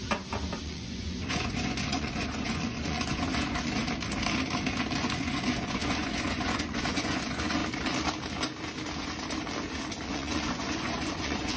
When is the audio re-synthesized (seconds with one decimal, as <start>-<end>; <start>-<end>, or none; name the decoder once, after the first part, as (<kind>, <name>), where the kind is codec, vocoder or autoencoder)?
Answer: 0.6-3.8 (vocoder, Vocos); 5.0-7.6; 10.1-11.6